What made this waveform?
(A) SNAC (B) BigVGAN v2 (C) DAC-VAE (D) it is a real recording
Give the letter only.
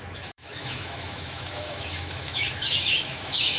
C